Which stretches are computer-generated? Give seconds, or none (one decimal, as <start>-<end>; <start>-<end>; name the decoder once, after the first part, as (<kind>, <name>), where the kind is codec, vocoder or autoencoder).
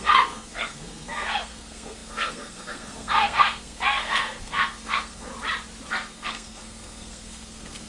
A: 0.0-5.3 (codec, SNAC); 5.9-7.9